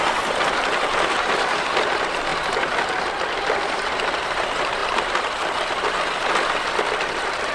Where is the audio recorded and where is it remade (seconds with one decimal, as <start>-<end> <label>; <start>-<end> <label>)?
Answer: 0.0-7.5 recorded